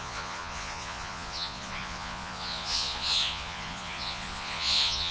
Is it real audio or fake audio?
fake